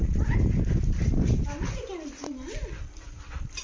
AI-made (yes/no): no